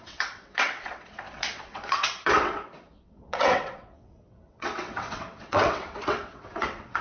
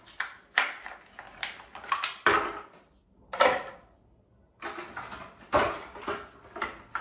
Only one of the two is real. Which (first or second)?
second